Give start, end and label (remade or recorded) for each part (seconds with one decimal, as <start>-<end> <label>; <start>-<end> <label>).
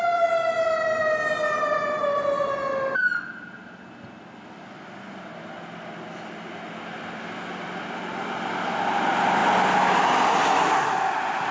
0.0-11.5 recorded